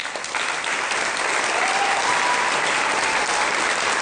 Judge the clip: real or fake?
real